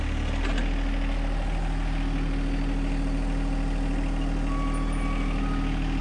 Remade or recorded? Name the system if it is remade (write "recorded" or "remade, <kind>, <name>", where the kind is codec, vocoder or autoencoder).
recorded